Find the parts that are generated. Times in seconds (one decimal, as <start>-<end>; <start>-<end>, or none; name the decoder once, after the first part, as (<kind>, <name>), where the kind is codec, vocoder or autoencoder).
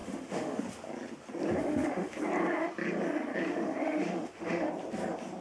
0.0-0.6 (autoencoder, DAC-VAE); 1.6-2.2; 3.4-4.7